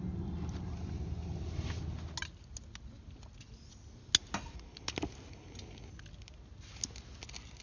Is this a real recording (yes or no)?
yes